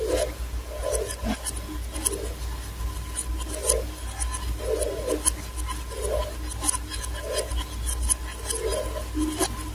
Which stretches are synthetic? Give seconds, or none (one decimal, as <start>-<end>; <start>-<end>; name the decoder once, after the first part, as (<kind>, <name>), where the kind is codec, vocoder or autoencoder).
none